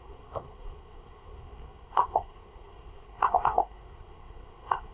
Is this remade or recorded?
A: remade